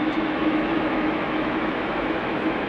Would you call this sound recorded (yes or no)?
no